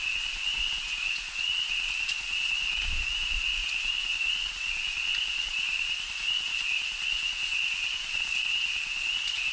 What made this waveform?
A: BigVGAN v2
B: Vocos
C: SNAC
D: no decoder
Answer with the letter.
B